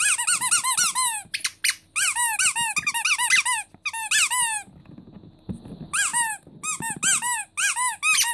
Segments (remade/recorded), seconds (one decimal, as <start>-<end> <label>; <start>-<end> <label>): 0.0-4.8 recorded; 4.8-5.5 remade; 5.5-8.3 recorded

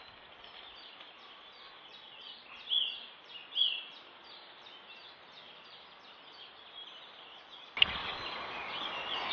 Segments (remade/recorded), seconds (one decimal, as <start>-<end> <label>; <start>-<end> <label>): 0.0-1.9 recorded; 1.9-2.5 remade; 2.5-8.0 recorded; 8.0-9.3 remade

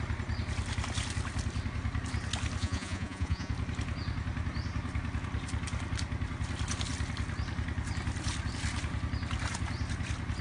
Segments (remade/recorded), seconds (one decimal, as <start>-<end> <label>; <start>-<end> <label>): 0.0-2.6 recorded; 2.6-3.5 remade; 3.5-10.4 recorded

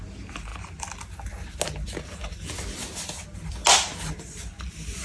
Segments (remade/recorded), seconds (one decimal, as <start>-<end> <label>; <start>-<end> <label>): 0.0-5.0 recorded

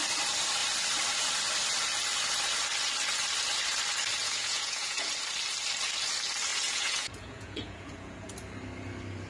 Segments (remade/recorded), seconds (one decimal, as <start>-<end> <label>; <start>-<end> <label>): 0.0-4.2 recorded; 4.2-5.1 remade; 5.1-6.5 recorded; 6.5-8.3 remade; 8.3-9.3 recorded